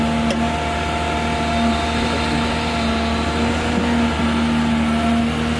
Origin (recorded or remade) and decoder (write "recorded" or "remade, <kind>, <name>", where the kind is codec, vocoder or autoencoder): recorded